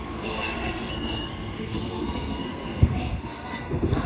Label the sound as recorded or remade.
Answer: remade